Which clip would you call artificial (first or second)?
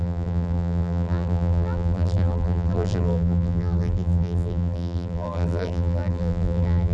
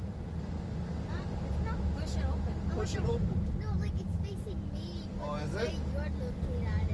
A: first